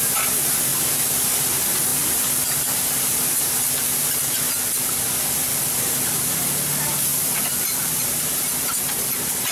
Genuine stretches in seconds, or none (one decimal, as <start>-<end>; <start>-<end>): 0.0-0.7; 1.3-1.9; 6.2-7.1; 9.1-9.5